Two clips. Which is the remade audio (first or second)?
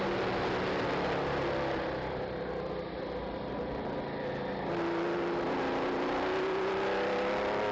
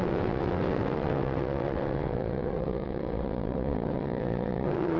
second